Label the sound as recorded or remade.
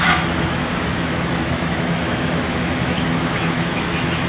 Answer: remade